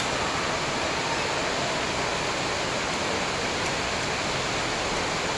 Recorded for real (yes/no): yes